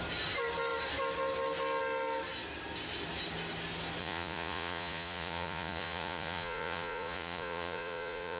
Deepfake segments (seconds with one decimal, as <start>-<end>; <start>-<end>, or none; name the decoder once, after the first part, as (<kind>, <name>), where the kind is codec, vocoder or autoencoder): 4.0-8.4 (vocoder, Vocos)

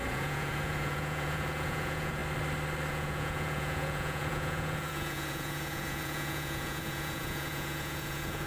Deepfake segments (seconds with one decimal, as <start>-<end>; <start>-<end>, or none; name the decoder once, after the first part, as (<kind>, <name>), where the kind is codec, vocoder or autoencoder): 0.0-2.2 (vocoder, Vocos); 2.9-8.5

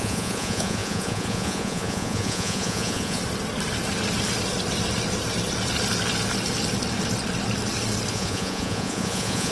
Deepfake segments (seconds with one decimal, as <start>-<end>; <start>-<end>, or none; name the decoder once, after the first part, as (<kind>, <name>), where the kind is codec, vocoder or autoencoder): 0.0-3.2 (vocoder, Vocos); 8.1-9.5

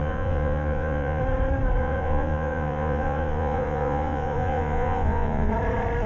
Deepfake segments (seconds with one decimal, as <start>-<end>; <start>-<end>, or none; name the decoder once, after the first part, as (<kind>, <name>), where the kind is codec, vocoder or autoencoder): 0.0-1.2 (vocoder, Vocos); 1.8-5.5

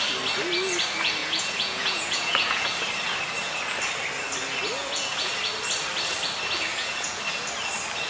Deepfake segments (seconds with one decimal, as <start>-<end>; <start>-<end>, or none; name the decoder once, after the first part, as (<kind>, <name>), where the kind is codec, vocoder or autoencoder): 1.2-2.7 (vocoder, Vocos); 4.8-5.3; 6.7-7.2

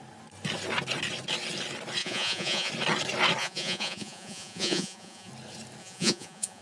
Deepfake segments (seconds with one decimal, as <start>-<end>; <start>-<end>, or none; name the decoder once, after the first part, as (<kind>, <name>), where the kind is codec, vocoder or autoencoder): 2.0-2.7 (vocoder, Vocos); 3.4-5.3; 5.8-6.6

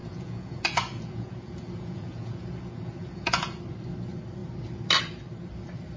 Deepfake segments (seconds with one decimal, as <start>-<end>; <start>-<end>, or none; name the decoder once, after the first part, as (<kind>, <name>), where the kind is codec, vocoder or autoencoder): 0.0-3.6 (vocoder, Vocos)